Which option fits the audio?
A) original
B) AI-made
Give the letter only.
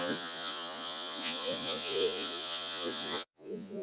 B